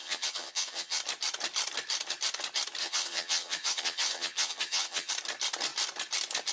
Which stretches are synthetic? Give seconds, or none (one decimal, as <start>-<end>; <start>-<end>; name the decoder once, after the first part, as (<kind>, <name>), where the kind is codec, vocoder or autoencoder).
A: 0.0-1.0 (vocoder, HiFi-GAN); 2.8-5.1